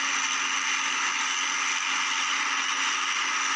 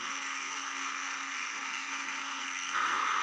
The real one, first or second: first